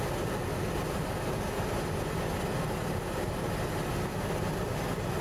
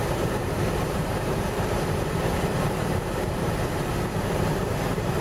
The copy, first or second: second